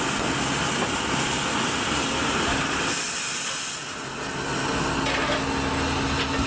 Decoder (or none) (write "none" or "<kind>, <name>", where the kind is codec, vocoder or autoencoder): none